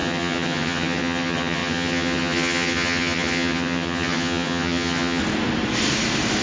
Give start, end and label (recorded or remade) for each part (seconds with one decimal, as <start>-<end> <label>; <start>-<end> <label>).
0.0-5.2 remade; 5.2-6.4 recorded